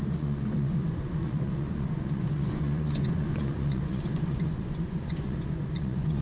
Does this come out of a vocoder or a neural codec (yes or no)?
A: yes